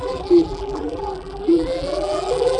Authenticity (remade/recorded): remade